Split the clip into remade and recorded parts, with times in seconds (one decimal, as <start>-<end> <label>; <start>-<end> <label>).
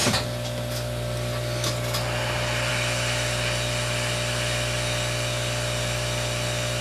0.0-6.8 recorded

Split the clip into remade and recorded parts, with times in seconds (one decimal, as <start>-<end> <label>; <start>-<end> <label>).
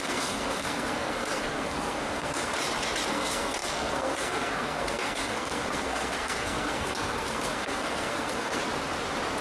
0.0-2.5 remade; 2.5-3.1 recorded; 3.1-8.6 remade; 8.6-9.4 recorded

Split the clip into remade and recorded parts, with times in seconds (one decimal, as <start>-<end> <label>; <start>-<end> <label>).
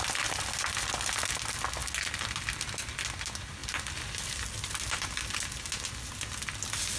0.0-7.0 recorded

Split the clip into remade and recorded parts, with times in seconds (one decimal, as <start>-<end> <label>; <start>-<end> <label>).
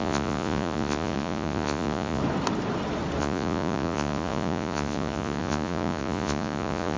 0.0-2.2 remade; 2.2-3.2 recorded; 3.2-7.0 remade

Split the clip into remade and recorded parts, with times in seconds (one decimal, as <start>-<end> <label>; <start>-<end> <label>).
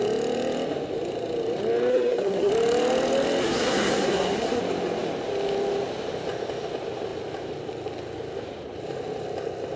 0.0-1.9 recorded; 1.9-2.5 remade; 2.5-3.4 recorded; 3.4-4.6 remade; 4.6-9.8 recorded